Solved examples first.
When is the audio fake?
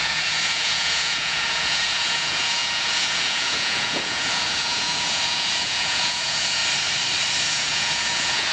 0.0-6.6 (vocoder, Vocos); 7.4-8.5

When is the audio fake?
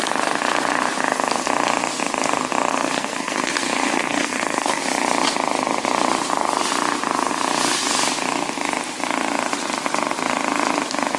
2.7-4.8 (codec, SNAC)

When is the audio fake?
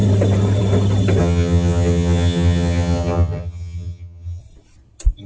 1.2-4.4 (vocoder, HiFi-GAN)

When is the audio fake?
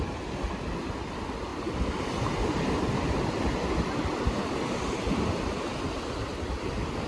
none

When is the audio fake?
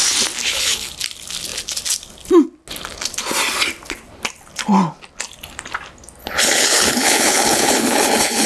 0.4-0.9 (codec, HILCodec); 6.2-8.5